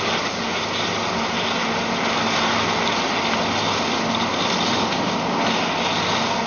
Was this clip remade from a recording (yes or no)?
no